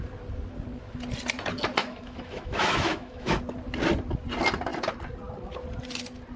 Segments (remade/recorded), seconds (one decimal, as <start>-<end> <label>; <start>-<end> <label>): 0.0-1.8 recorded; 1.8-3.4 remade; 3.4-6.4 recorded